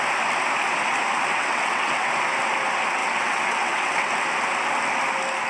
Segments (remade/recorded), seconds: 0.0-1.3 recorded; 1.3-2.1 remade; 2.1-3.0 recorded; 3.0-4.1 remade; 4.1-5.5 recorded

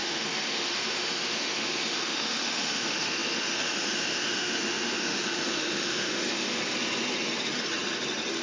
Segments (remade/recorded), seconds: 0.0-6.6 remade; 6.6-8.4 recorded

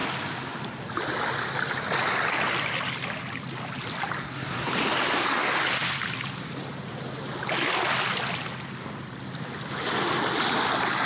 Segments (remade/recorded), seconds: 0.0-4.2 recorded; 4.2-4.7 remade; 4.7-11.1 recorded

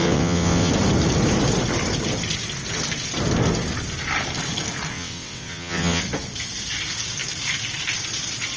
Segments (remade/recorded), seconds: 0.0-0.7 remade; 0.7-4.9 recorded; 4.9-6.0 remade; 6.0-8.6 recorded